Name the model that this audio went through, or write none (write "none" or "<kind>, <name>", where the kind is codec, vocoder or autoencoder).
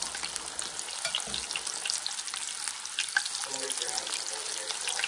none